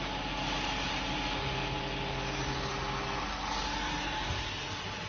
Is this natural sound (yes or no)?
yes